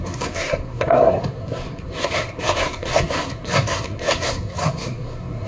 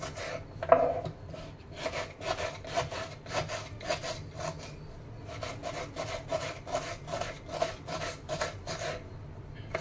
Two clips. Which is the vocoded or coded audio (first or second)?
first